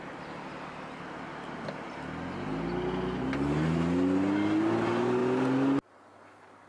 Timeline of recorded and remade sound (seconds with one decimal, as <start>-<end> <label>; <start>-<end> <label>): 0.0-6.7 recorded